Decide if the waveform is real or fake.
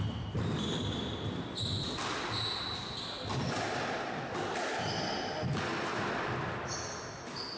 real